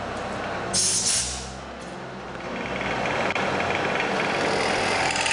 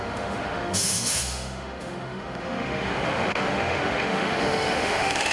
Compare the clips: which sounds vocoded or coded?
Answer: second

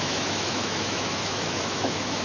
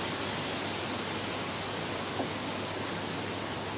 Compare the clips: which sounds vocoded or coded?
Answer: first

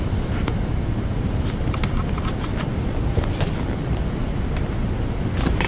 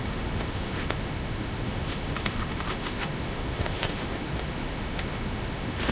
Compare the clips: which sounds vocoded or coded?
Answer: second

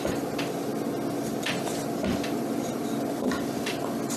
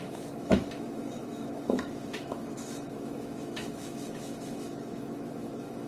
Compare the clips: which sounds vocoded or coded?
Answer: second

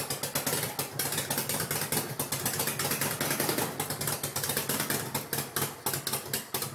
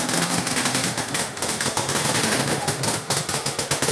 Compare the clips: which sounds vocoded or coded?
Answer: second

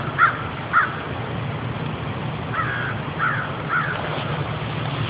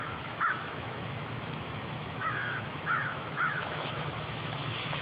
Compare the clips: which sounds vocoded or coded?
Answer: second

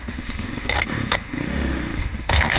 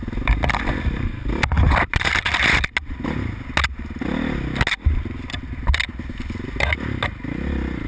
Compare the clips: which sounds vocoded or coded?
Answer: first